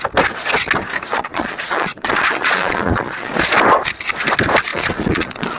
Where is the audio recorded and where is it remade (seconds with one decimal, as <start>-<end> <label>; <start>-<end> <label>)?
0.0-1.1 recorded; 1.1-3.3 remade; 3.3-4.7 recorded; 4.7-5.6 remade